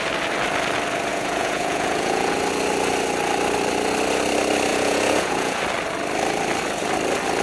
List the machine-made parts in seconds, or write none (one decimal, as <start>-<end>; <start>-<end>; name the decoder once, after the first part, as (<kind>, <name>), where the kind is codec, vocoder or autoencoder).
1.1-2.3 (vocoder, Vocos); 4.7-5.6